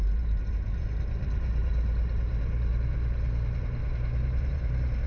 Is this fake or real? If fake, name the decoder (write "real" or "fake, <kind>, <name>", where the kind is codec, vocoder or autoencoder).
fake, vocoder, BigVGAN v2